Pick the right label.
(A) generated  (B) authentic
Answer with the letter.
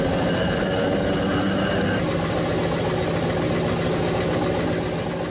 B